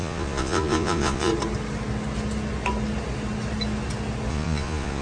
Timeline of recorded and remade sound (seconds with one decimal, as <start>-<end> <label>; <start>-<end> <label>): 0.0-1.3 remade; 1.3-4.3 recorded; 4.3-5.0 remade